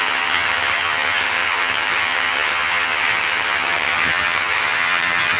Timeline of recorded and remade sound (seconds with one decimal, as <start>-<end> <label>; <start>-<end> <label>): 0.0-5.4 remade